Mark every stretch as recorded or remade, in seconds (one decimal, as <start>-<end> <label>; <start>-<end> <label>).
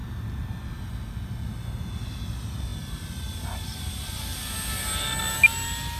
0.0-6.0 recorded